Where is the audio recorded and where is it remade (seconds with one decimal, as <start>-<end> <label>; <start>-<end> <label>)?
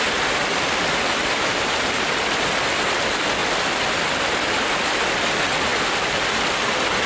0.0-3.4 remade; 3.4-4.4 recorded; 4.4-5.7 remade; 5.7-6.5 recorded; 6.5-7.1 remade